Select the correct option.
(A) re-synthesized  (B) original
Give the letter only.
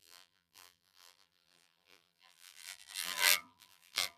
A